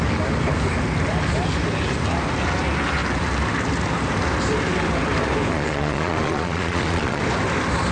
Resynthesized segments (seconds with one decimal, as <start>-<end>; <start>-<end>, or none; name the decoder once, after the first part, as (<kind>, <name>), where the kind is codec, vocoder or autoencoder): 5.5-7.2 (vocoder, Vocos)